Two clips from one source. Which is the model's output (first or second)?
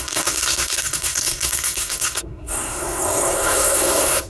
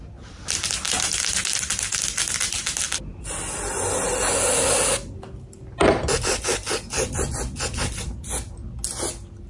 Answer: first